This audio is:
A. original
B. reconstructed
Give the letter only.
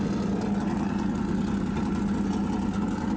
A